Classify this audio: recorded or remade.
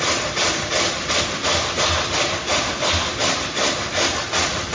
recorded